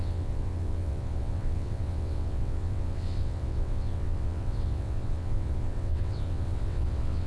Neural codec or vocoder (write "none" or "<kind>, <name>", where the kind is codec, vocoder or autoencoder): vocoder, WaveNeXt